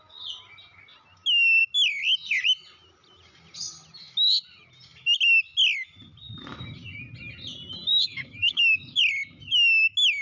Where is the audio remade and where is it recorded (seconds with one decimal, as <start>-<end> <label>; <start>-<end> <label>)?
0.0-7.9 recorded; 7.9-9.0 remade; 9.0-10.2 recorded